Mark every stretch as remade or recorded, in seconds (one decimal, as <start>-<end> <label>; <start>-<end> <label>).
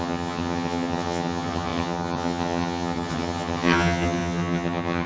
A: 0.0-5.1 remade